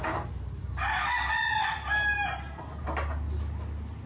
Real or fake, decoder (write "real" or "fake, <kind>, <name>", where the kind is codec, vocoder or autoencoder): real